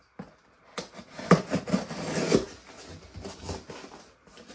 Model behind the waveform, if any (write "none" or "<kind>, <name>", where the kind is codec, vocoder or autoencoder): none